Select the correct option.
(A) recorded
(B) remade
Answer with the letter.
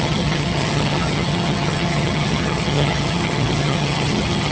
B